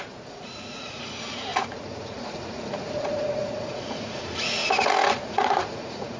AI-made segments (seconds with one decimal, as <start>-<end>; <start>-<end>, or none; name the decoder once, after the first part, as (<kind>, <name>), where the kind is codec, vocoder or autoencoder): 0.0-4.6 (vocoder, Vocos); 5.2-6.2